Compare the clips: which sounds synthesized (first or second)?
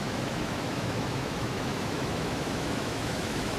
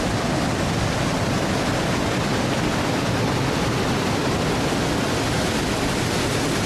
first